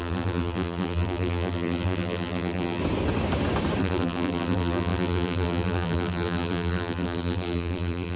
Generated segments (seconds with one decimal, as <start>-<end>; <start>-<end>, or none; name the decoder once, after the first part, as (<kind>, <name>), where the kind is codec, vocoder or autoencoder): 0.0-2.8 (vocoder, BigVGAN v2); 3.8-8.2